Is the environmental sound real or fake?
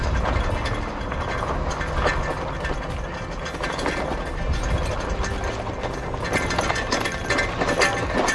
real